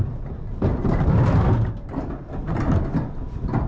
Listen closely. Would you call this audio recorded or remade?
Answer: recorded